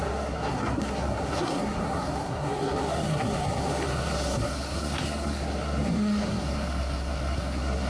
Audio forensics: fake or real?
fake